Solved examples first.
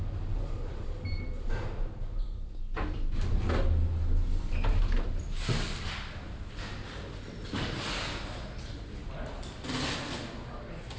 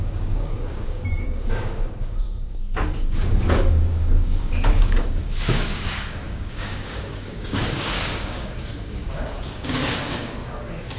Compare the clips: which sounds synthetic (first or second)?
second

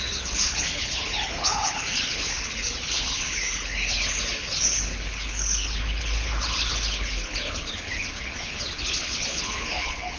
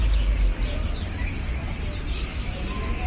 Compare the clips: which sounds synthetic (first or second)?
first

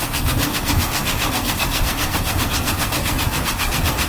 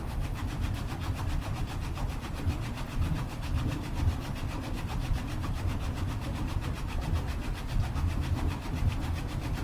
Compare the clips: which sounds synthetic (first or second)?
first